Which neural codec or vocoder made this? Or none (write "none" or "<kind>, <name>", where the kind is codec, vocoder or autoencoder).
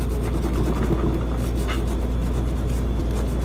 none